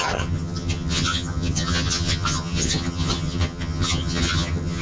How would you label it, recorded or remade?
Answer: remade